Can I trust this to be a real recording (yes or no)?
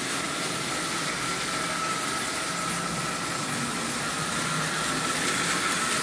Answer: yes